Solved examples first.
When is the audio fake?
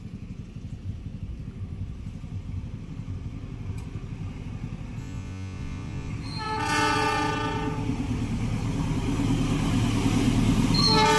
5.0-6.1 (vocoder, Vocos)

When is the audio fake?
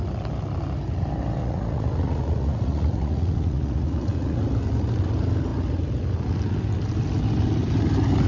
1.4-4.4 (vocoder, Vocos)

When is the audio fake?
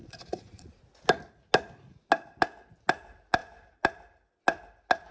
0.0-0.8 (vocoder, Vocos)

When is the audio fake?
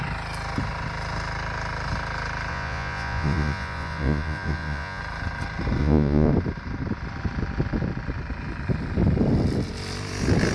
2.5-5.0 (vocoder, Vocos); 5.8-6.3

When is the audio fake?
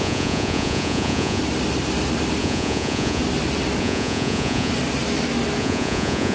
0.0-1.4 (vocoder, Vocos); 2.4-3.2; 3.8-4.7; 5.6-6.3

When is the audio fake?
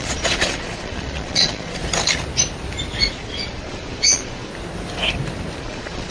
0.0-1.8 (vocoder, Vocos); 3.1-4.5; 5.6-6.1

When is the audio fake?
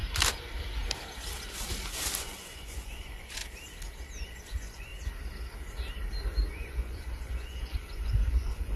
2.2-3.4 (vocoder, Vocos); 4.2-4.9; 6.5-8.8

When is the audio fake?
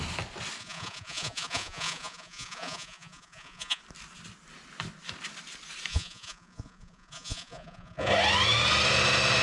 0.6-3.8 (vocoder, Vocos); 5.9-8.1